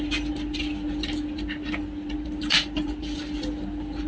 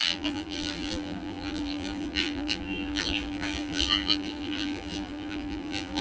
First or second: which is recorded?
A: first